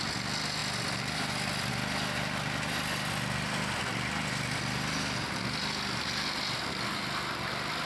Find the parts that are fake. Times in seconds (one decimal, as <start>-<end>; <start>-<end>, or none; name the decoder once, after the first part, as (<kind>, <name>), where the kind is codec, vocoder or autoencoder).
none